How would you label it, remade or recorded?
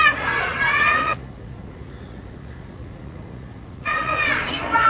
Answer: remade